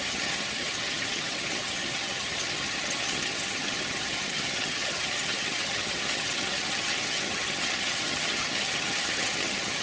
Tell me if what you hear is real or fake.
fake